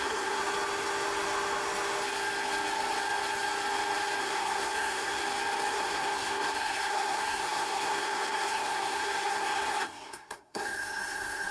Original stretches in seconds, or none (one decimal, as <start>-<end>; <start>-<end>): 0.4-4.2; 5.2-5.7